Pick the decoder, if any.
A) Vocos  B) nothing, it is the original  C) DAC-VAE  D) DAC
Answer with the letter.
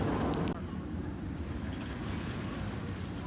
B